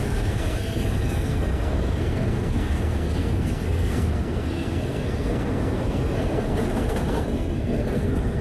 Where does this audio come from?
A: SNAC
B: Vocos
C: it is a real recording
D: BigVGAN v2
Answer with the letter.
A